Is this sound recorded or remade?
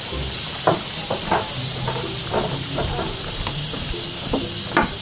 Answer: recorded